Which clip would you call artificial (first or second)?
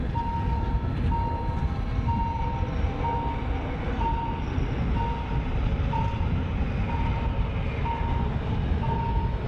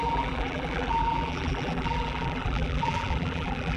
second